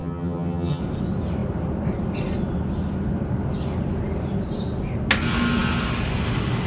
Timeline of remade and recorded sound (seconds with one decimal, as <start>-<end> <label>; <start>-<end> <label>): 0.0-0.8 remade; 0.8-6.7 recorded